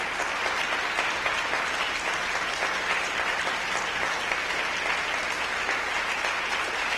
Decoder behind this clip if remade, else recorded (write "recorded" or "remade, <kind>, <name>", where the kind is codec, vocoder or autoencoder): recorded